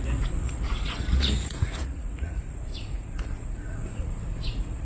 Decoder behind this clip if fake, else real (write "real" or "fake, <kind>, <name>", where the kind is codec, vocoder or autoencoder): fake, vocoder, Vocos